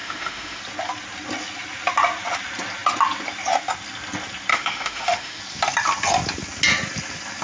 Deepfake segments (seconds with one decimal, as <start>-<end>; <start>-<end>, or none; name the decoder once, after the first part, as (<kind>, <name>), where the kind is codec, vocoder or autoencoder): 0.0-0.6 (autoencoder, DAC-VAE); 4.5-5.4

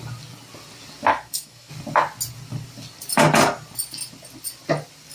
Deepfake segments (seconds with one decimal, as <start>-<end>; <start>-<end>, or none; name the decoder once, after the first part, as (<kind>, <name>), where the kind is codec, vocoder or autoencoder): 1.1-1.7 (autoencoder, DAC-VAE)

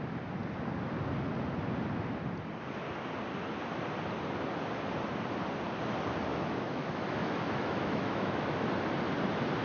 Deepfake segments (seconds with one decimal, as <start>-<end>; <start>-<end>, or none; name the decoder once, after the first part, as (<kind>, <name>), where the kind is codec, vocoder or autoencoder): 6.3-8.7 (autoencoder, DAC-VAE)